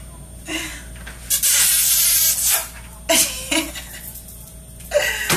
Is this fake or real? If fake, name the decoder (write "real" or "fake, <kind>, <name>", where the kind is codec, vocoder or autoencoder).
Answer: real